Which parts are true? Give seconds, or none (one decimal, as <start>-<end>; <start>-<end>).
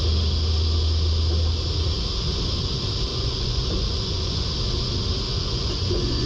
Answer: 0.0-3.1; 4.5-5.3